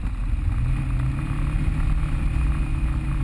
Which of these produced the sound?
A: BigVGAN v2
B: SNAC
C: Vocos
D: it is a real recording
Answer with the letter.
D